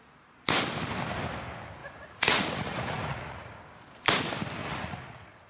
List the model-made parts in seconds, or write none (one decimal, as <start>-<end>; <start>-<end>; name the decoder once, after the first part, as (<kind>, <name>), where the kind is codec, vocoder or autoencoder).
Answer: 1.8-3.6 (vocoder, Vocos); 4.6-5.5